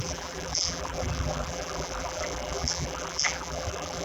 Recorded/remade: remade